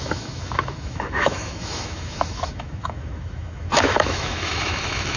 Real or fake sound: fake